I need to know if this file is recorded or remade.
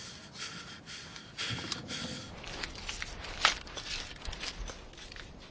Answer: recorded